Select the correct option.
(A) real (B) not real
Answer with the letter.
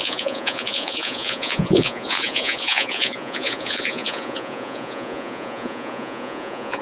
B